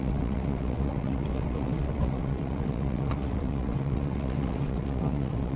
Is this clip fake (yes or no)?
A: yes